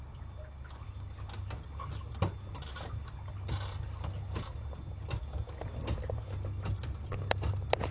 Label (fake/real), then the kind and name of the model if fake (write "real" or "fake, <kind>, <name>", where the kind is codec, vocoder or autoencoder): real